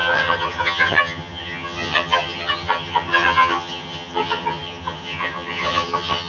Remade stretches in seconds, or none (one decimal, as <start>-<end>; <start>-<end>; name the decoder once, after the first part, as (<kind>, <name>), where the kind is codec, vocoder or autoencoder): 0.0-6.3 (vocoder, HiFi-GAN)